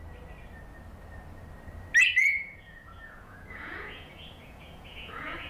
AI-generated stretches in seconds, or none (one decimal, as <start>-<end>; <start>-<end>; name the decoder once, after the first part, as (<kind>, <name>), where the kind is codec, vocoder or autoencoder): 2.2-5.5 (vocoder, Vocos)